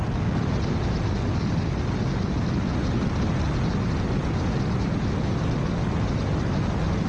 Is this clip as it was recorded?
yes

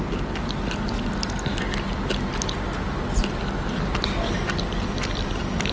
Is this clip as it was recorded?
yes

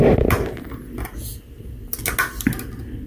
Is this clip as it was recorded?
yes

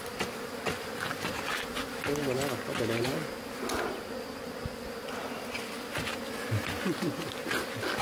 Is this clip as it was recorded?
yes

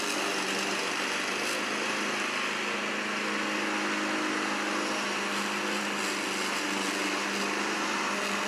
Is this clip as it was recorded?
yes